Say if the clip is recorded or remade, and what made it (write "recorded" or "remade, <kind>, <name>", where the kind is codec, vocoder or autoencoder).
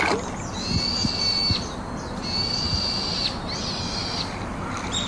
recorded